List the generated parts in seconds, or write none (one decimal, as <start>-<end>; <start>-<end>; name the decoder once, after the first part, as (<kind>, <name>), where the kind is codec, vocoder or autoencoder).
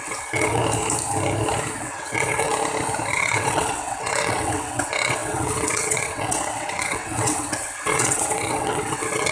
0.0-0.6 (vocoder, WaveNeXt); 1.8-2.5; 3.1-9.3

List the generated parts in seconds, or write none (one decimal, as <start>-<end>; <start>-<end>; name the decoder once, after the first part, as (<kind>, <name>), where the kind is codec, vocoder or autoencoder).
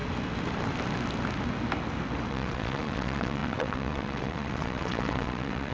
2.3-5.7 (vocoder, WaveNeXt)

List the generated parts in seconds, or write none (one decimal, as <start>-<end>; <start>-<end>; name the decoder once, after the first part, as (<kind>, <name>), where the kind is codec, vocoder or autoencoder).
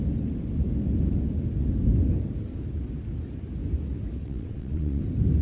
4.2-5.0 (vocoder, WaveNeXt)